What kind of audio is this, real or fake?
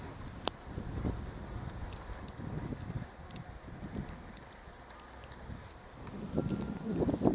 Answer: real